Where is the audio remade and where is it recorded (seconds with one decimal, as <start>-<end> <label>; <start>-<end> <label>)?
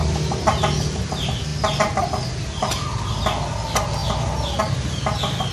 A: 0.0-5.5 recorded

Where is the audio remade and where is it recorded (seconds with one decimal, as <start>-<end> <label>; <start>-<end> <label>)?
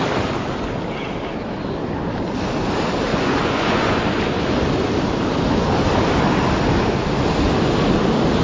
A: 0.0-3.1 recorded; 3.1-4.0 remade; 4.0-8.4 recorded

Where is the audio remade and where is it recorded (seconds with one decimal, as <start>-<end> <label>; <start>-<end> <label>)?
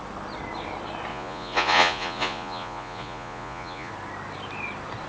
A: 0.0-1.1 recorded; 1.1-3.9 remade; 3.9-5.1 recorded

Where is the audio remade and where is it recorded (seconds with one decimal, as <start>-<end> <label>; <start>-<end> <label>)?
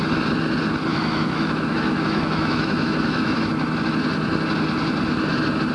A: 0.0-0.9 recorded; 0.9-3.7 remade; 3.7-5.7 recorded